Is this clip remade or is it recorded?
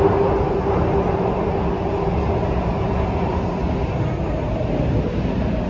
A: recorded